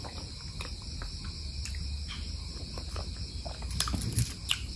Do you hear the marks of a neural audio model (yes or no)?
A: no